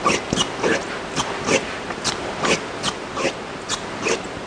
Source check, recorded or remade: recorded